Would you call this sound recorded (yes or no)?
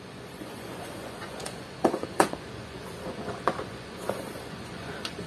no